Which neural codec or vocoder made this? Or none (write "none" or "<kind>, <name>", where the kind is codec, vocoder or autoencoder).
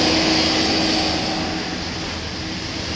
none